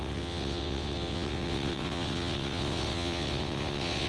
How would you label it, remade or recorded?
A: remade